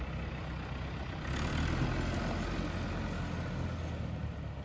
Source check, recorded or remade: recorded